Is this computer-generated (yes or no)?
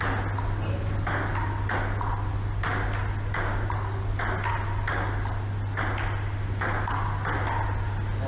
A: no